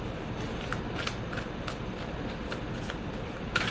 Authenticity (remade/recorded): recorded